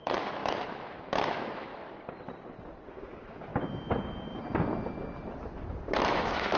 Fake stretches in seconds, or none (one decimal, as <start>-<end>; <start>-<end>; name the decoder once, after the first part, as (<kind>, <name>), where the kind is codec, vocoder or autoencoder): 0.0-1.7 (autoencoder, DAC-VAE); 2.9-3.5; 5.9-6.6